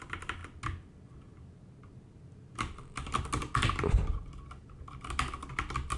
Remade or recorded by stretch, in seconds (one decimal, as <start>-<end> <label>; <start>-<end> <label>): 0.0-6.0 recorded